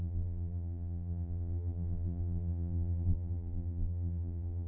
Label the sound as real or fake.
fake